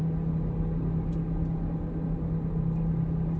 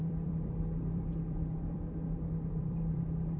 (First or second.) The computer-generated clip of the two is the second